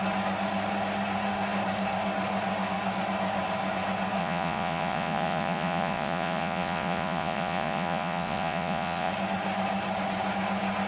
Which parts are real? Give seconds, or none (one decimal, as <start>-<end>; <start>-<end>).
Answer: 0.0-4.2; 9.1-10.9